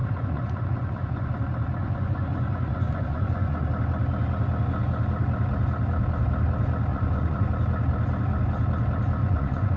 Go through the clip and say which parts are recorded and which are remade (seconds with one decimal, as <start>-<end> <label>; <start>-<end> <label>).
0.0-1.3 remade; 1.3-1.8 recorded; 1.8-3.7 remade; 3.7-6.9 recorded; 6.9-7.5 remade; 7.5-9.2 recorded; 9.2-9.8 remade